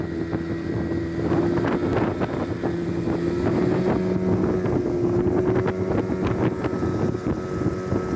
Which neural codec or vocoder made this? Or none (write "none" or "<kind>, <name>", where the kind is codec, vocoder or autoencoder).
none